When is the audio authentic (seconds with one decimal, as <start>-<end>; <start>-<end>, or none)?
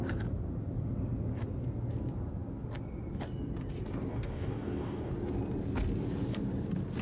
0.0-4.1; 5.1-7.0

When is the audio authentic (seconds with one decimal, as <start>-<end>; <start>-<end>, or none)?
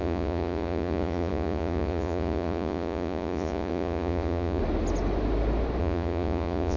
4.6-5.8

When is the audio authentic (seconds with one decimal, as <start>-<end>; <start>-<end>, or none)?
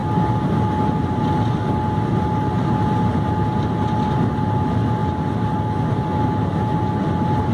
0.0-7.5